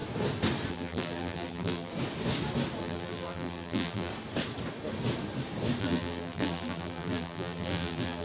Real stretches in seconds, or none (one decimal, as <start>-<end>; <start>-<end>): 0.0-0.7; 1.9-2.8; 4.1-5.8